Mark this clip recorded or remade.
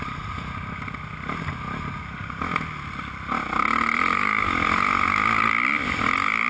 recorded